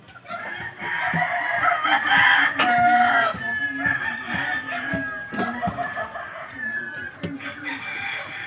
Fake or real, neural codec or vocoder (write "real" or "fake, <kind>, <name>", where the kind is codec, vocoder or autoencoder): real